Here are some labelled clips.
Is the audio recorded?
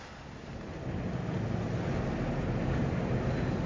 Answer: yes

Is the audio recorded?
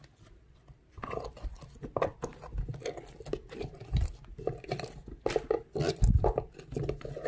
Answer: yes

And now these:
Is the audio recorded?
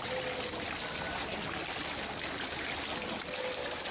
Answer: yes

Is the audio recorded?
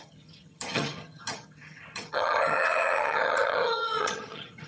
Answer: no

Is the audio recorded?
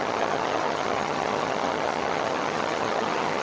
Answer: no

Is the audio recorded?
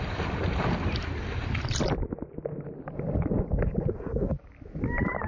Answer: yes